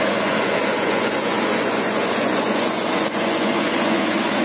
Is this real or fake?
fake